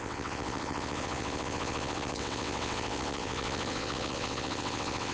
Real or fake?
fake